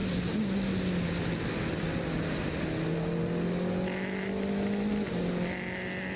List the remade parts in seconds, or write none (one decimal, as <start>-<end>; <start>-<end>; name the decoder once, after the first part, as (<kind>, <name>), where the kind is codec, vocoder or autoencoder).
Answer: none